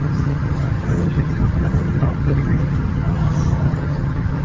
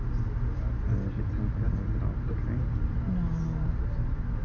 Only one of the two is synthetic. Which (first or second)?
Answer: first